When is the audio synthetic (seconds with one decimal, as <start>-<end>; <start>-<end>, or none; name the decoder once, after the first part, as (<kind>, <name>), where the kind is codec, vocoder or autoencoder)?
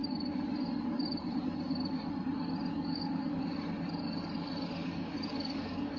2.7-3.4 (codec, DAC); 4.8-6.0